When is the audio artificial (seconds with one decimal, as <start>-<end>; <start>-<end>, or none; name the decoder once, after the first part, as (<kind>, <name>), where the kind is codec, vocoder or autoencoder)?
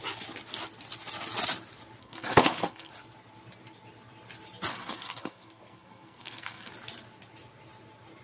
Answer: 2.0-2.9 (codec, SNAC); 4.7-6.7